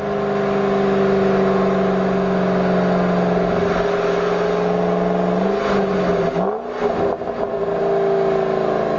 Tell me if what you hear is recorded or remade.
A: recorded